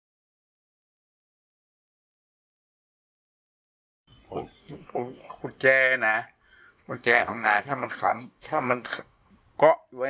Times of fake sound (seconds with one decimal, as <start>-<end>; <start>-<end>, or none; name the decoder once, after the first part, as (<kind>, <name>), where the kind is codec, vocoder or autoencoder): 4.6-5.3 (codec, DAC); 6.6-9.3